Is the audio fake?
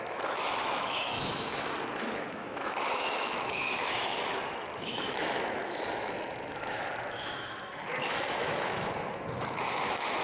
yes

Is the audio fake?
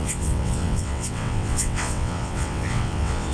yes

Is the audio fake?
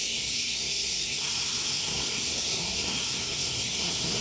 yes